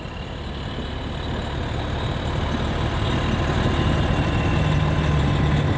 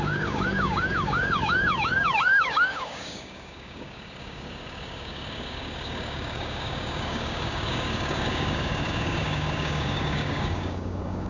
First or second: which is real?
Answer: first